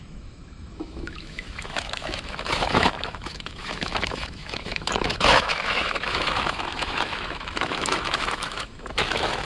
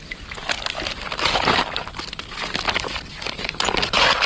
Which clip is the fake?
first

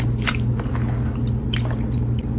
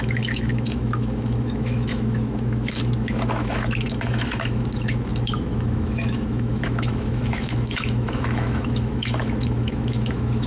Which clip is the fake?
second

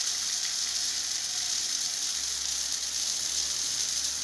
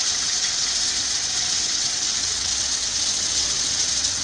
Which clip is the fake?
second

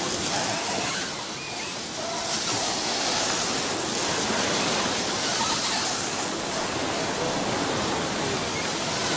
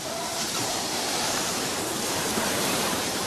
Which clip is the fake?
second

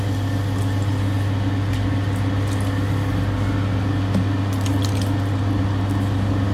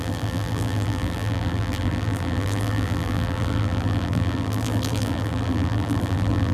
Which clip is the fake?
second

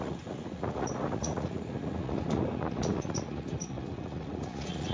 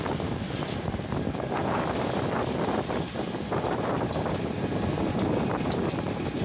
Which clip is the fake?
first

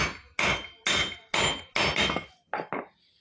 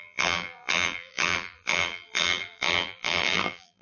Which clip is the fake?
second